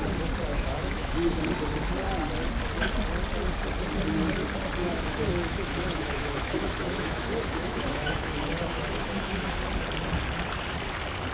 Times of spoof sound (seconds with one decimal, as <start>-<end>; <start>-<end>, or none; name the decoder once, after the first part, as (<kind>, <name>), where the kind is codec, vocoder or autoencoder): 0.5-1.1 (autoencoder, DAC-VAE); 4.8-9.6

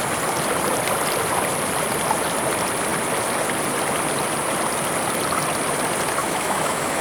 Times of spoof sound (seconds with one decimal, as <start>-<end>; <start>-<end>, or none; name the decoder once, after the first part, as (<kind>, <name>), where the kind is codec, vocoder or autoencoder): 6.2-7.0 (autoencoder, DAC-VAE)

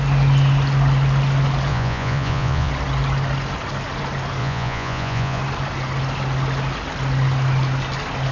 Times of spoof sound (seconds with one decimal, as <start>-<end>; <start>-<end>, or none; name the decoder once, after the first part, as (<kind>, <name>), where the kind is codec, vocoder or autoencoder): 1.7-2.7 (vocoder, Vocos); 4.4-5.4

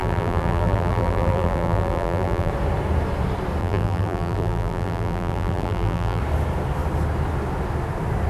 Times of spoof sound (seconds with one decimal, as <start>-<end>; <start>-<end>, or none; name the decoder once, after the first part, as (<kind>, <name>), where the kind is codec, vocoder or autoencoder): 0.0-2.5 (vocoder, BigVGAN v2); 3.6-6.2

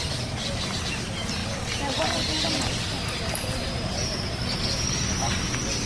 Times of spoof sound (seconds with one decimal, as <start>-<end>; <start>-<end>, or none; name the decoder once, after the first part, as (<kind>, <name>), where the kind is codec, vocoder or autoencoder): none